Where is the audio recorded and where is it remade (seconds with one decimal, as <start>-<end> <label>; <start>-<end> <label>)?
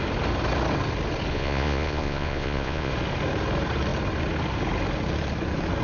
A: 0.0-1.3 recorded; 1.3-2.9 remade; 2.9-5.8 recorded